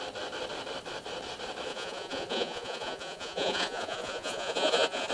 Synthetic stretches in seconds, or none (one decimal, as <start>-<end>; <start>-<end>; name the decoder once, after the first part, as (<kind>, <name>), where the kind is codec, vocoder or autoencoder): 1.7-5.1 (vocoder, Vocos)